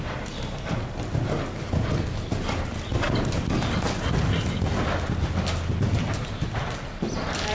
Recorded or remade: recorded